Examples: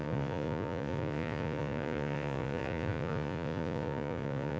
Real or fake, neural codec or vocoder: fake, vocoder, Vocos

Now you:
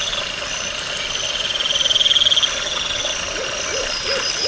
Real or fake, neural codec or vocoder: real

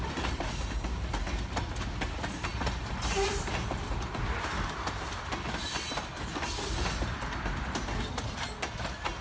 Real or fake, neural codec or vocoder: real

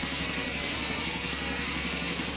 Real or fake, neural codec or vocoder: fake, codec, SNAC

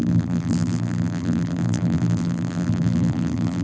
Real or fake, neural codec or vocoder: fake, vocoder, BigVGAN v2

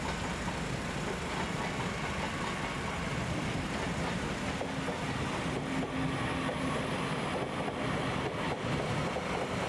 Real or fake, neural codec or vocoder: real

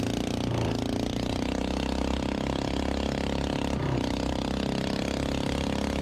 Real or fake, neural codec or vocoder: real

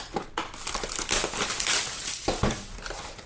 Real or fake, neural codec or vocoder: real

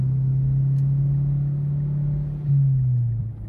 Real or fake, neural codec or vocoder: real